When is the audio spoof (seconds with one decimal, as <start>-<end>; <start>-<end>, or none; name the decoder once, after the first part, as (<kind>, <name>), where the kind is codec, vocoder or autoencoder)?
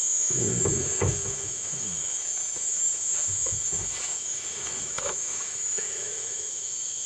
0.0-7.1 (autoencoder, DAC-VAE)